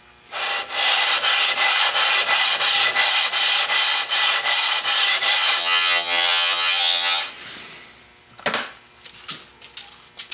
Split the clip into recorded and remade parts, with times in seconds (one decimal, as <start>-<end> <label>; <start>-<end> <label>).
0.0-5.6 recorded; 5.6-7.2 remade; 7.2-10.3 recorded